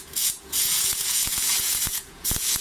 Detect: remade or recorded remade